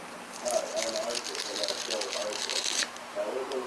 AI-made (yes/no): no